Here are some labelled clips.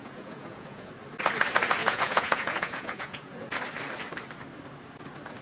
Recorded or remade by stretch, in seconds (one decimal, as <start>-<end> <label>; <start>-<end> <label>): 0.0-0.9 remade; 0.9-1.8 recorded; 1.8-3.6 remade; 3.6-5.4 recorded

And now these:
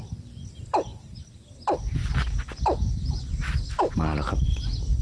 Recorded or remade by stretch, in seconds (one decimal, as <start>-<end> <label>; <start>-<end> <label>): 0.0-5.0 recorded

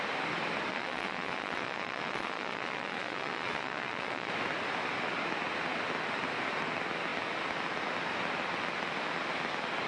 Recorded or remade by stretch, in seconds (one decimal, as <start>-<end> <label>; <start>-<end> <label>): 0.0-0.7 recorded; 0.7-4.3 remade; 4.3-9.9 recorded

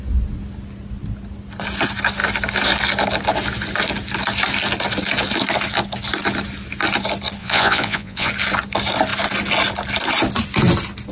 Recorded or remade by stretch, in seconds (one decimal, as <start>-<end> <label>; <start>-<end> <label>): 0.0-7.4 recorded; 7.4-8.3 remade; 8.3-11.1 recorded

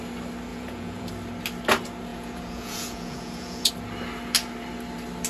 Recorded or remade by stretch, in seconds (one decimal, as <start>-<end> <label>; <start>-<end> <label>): 0.0-0.5 recorded; 0.5-1.1 remade; 1.1-2.1 recorded; 2.1-3.7 remade; 3.7-5.3 recorded

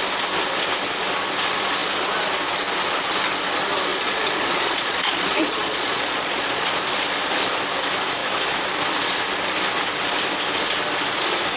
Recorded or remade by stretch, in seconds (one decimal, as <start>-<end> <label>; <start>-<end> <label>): 0.0-3.9 recorded; 3.9-6.8 remade; 6.8-11.6 recorded

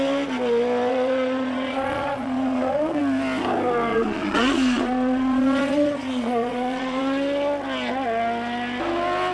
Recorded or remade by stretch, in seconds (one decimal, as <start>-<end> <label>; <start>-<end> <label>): 0.0-0.9 recorded; 0.9-3.0 remade; 3.0-3.9 recorded; 3.9-7.0 remade; 7.0-9.3 recorded

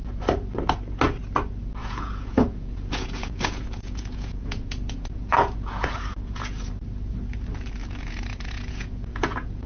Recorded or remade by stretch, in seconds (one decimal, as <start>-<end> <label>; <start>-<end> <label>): 0.0-1.8 recorded; 1.8-6.7 remade; 6.7-7.8 recorded; 7.8-9.7 remade